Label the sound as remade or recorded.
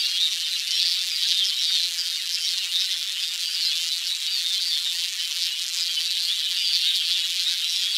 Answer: remade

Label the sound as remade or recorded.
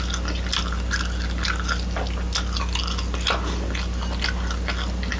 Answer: recorded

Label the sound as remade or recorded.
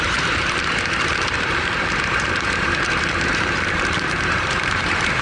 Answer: remade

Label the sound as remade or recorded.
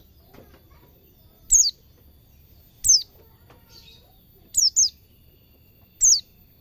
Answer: recorded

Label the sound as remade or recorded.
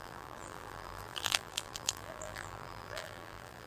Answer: remade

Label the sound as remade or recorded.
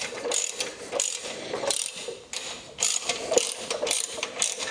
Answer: remade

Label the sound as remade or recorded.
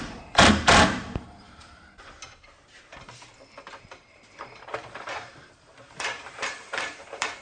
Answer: remade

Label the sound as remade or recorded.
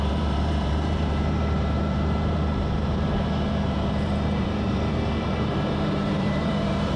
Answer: remade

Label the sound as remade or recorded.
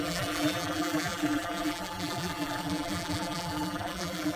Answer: remade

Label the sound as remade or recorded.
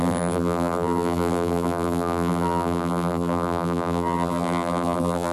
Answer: remade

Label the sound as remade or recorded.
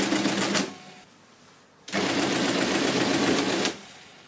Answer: recorded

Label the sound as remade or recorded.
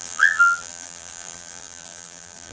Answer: remade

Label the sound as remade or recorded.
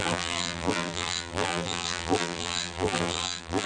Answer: remade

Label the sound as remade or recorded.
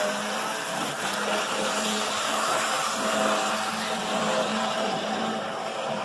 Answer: remade